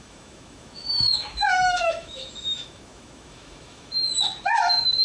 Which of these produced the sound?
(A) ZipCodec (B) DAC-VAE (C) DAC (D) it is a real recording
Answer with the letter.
B